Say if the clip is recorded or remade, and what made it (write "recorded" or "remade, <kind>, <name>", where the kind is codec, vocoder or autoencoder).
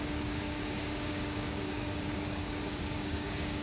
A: remade, codec, DAC